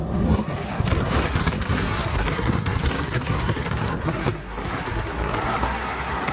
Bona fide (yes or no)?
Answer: no